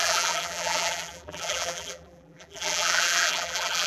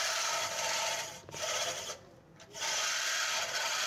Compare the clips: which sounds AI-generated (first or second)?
first